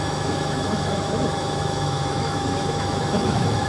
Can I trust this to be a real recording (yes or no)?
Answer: no